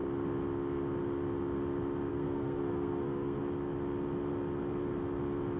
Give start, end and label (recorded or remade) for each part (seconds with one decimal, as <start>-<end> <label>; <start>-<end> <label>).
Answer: 0.0-2.1 recorded; 2.1-3.4 remade; 3.4-5.6 recorded

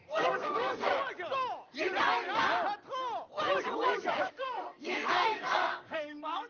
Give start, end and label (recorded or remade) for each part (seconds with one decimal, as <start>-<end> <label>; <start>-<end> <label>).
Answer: 0.0-0.9 remade; 0.9-4.3 recorded; 4.3-6.5 remade